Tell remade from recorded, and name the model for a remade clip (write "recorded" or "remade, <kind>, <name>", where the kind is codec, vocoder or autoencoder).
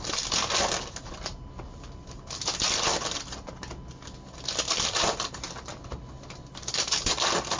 recorded